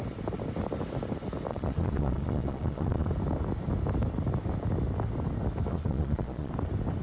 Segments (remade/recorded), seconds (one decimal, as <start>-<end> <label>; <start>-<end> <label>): 0.0-1.5 recorded; 1.5-3.1 remade; 3.1-5.7 recorded; 5.7-6.5 remade; 6.5-7.0 recorded